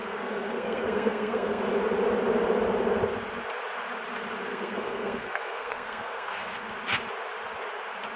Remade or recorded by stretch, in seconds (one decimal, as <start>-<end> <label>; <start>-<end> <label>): 0.0-1.6 remade; 1.6-4.5 recorded; 4.5-6.7 remade; 6.7-8.2 recorded